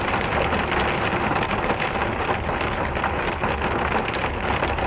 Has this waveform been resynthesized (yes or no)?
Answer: no